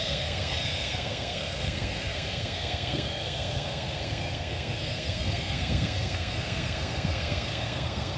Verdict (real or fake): fake